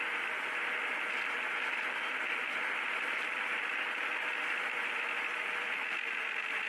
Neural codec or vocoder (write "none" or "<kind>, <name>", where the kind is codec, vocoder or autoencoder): none